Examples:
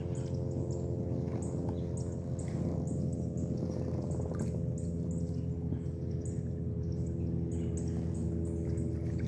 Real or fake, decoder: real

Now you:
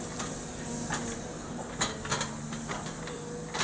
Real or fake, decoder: real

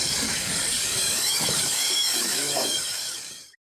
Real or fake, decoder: fake, codec, DAC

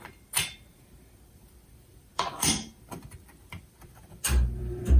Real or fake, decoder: fake, vocoder, BigVGAN v2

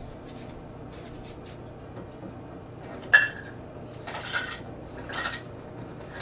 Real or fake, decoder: real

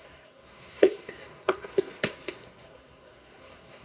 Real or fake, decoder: fake, codec, SNAC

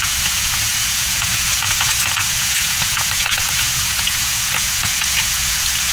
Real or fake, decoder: fake, vocoder, Vocos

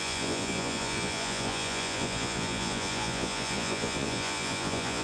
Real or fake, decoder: fake, vocoder, Vocos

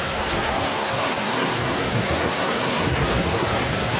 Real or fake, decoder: fake, codec, SNAC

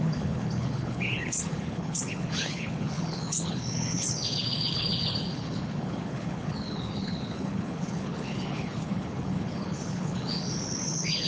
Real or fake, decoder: fake, codec, HILCodec